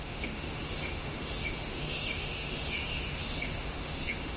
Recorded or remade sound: remade